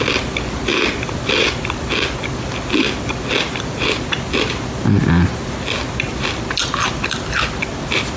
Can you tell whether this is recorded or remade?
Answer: recorded